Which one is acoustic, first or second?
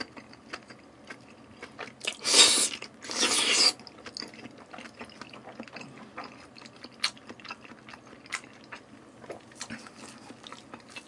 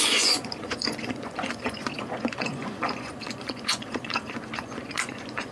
first